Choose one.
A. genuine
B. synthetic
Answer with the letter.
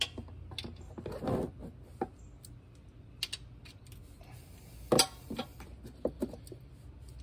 A